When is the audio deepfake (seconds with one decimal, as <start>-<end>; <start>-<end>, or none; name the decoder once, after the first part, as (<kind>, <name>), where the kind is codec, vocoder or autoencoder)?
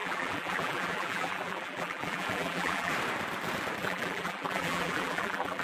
0.0-2.9 (vocoder, BigVGAN v2); 3.8-5.6